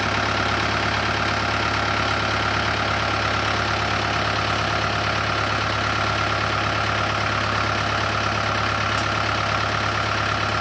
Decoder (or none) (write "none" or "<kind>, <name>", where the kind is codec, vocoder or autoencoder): none